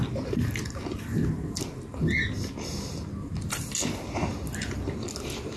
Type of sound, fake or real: real